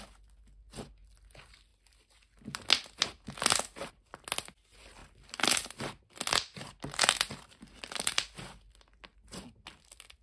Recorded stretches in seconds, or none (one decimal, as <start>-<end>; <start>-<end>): 0.0-10.2